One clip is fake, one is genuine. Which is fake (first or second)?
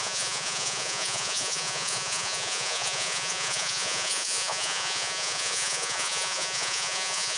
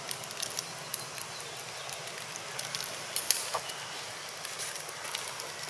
first